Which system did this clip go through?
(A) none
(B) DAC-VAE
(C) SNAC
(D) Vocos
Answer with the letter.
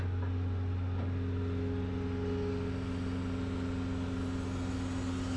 A